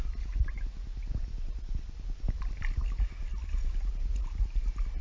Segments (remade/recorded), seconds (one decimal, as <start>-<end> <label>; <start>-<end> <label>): 0.0-5.0 recorded